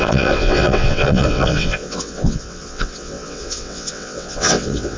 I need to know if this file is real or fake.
fake